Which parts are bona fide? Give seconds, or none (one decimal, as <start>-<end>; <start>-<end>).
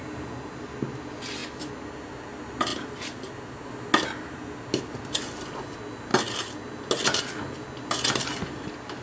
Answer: 0.0-9.0